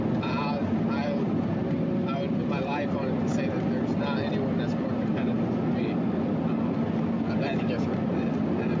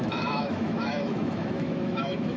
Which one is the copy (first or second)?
second